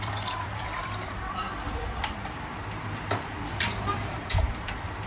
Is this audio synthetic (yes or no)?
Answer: yes